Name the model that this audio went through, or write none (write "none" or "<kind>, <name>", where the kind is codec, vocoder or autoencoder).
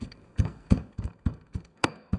codec, SNAC